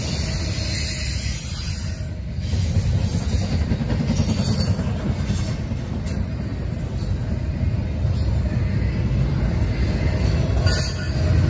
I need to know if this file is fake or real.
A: real